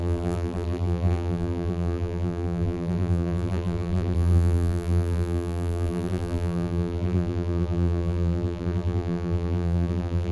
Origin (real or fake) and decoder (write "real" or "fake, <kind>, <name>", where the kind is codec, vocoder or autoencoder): fake, vocoder, BigVGAN v2